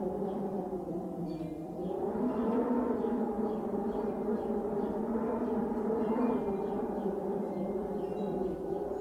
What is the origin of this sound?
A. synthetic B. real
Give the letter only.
A